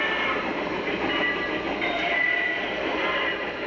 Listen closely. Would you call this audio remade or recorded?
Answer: remade